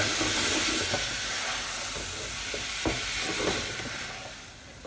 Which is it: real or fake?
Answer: real